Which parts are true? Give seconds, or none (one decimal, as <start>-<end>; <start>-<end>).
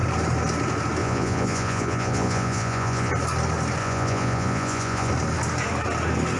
0.0-1.0; 3.1-3.8; 5.1-6.4